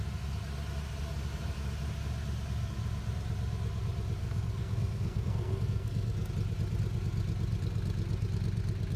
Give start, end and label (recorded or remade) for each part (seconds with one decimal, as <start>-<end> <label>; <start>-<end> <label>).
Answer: 0.0-4.2 recorded; 4.2-6.3 remade; 6.3-9.0 recorded